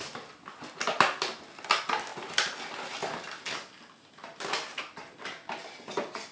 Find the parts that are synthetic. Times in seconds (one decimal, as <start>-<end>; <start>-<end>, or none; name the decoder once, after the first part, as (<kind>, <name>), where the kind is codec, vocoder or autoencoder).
none